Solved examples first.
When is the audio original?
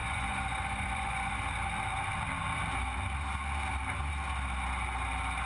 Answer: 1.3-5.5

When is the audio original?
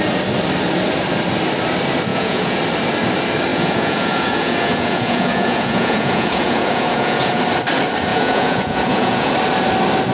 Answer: 0.0-2.1; 2.6-3.5; 7.4-8.1; 9.3-10.1